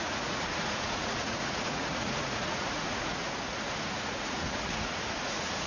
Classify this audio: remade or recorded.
remade